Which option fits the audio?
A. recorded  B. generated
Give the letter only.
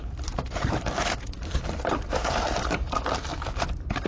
B